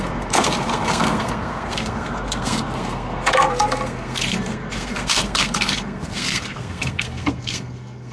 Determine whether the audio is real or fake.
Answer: fake